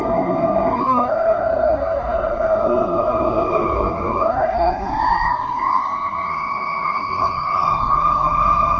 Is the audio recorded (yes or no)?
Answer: no